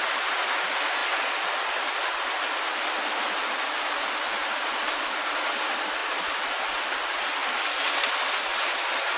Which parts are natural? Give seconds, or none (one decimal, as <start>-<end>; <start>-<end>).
0.0-4.3; 5.3-6.0; 6.8-9.2

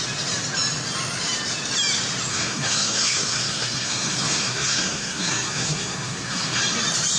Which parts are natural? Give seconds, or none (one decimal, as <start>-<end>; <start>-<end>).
0.0-2.3; 6.6-7.2

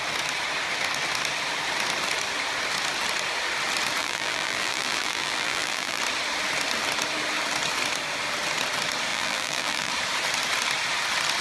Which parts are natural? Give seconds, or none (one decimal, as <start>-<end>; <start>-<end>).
0.0-4.0; 6.0-9.1; 9.9-11.4

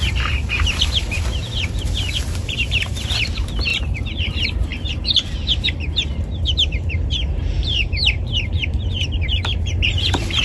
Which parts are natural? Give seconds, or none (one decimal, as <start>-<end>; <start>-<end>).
none

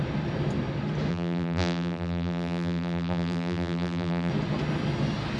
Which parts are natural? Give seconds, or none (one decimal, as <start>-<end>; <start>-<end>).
0.0-1.1; 4.3-5.4

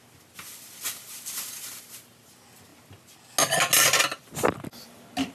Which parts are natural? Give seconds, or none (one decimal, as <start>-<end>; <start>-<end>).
0.0-5.3

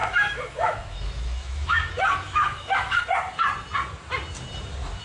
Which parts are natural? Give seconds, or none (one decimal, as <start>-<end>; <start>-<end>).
3.0-5.0